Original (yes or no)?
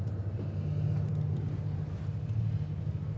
yes